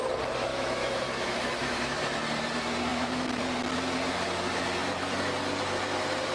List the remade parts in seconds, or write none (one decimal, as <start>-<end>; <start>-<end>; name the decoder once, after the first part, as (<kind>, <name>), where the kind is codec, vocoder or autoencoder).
0.5-2.0 (autoencoder, DAC-VAE); 2.9-3.4